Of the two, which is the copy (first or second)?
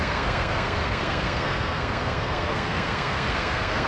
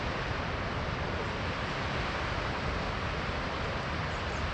first